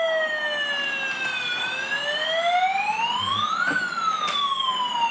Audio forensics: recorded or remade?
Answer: recorded